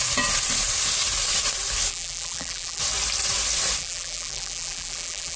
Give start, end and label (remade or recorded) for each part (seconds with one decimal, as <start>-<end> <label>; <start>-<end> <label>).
0.0-1.9 recorded; 1.9-2.8 remade; 2.8-3.8 recorded; 3.8-5.4 remade